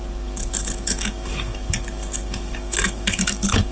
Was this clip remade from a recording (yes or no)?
yes